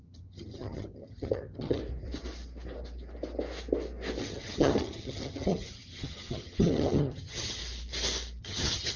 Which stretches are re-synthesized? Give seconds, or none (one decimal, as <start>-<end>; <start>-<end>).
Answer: 0.0-1.8; 4.2-7.6; 8.4-9.0

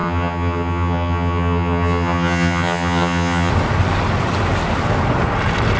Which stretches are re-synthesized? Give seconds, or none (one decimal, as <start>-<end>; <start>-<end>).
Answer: 0.0-3.5

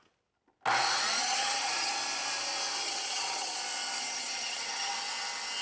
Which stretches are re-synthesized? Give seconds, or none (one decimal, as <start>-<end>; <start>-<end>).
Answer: 1.2-1.9; 2.8-3.6; 4.0-4.9

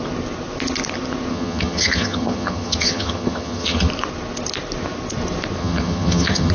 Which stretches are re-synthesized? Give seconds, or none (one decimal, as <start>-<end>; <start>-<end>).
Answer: 1.3-3.9; 5.6-6.5

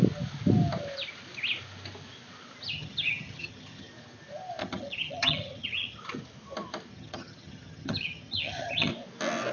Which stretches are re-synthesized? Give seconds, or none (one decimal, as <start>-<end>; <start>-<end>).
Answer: 2.7-3.9; 4.6-6.0; 6.9-8.9

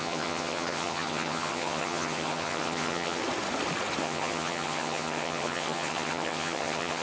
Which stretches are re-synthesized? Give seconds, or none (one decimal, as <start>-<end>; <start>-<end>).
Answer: 0.0-3.2; 4.0-7.0